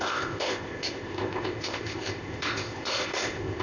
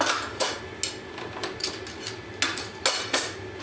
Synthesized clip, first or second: first